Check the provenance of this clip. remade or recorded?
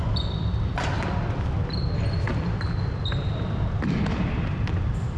recorded